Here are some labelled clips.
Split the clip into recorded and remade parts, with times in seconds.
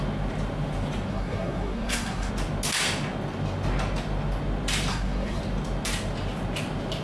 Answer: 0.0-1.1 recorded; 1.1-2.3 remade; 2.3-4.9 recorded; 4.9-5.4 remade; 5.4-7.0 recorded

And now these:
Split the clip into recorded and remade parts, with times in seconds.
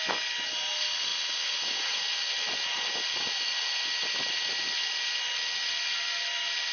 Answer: 0.0-6.7 recorded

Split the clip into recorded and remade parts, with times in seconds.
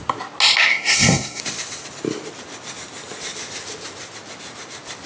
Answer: 0.0-0.7 recorded; 0.7-1.4 remade; 1.4-5.1 recorded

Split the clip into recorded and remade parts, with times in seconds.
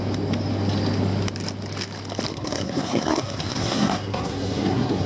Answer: 0.0-2.3 recorded; 2.3-5.1 remade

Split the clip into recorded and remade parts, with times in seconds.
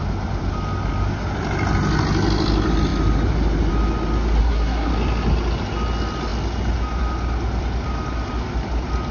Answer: 0.0-4.4 recorded; 4.4-4.9 remade; 4.9-9.1 recorded